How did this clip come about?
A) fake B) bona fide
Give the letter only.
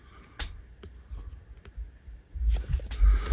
B